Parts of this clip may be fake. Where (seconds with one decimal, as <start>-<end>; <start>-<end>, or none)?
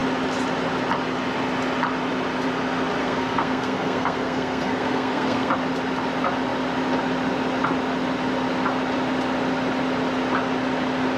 3.0-5.5